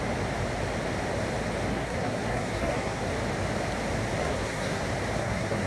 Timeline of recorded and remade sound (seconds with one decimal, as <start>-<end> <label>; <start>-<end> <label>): 0.0-1.7 recorded; 1.7-3.0 remade; 3.0-4.2 recorded; 4.2-4.8 remade; 4.8-5.2 recorded; 5.2-5.7 remade